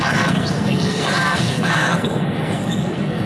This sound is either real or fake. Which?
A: fake